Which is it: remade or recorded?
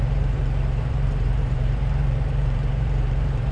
remade